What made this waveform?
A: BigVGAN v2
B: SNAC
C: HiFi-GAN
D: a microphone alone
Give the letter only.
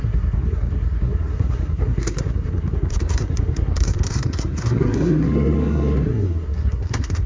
B